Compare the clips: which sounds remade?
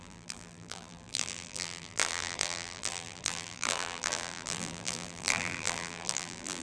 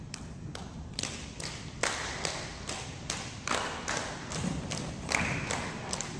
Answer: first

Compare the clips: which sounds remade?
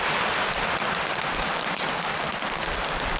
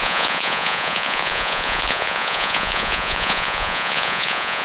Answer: second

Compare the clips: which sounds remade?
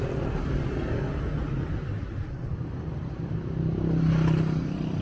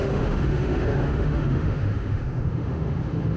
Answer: second